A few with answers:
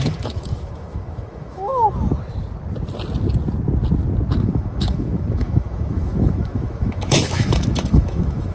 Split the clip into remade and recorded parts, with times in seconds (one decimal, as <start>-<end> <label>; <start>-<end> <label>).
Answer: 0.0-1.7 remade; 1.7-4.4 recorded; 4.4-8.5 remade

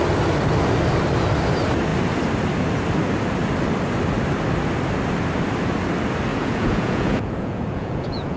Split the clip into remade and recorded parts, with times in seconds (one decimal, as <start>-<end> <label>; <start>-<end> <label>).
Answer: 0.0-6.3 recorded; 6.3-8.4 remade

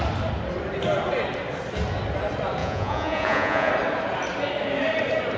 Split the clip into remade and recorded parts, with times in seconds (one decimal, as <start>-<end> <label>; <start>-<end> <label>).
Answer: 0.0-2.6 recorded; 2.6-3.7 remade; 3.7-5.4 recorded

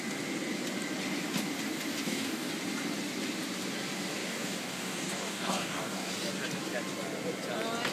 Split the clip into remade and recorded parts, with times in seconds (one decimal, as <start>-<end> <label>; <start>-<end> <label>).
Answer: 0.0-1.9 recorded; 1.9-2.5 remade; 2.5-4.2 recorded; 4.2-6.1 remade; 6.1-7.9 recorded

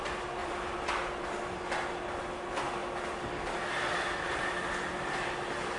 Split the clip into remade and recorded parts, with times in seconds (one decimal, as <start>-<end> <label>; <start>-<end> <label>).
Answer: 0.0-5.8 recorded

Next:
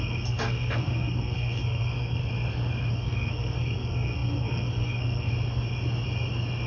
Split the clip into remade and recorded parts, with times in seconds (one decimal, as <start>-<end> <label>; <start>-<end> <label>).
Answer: 0.0-2.2 remade; 2.2-2.9 recorded; 2.9-5.3 remade; 5.3-6.7 recorded